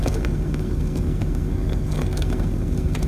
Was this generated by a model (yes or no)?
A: yes